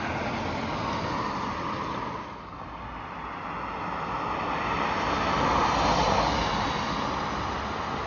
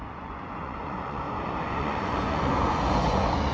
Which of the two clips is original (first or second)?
first